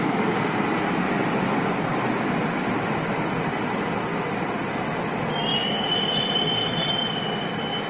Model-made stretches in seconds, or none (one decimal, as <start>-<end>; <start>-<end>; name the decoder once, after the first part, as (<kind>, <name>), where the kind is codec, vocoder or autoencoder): 5.5-7.5 (vocoder, BigVGAN v2)